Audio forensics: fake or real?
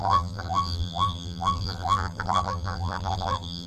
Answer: fake